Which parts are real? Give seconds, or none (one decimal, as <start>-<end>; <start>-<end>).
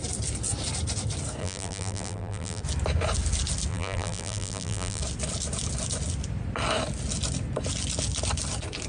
0.0-1.4; 2.6-3.7; 5.0-8.9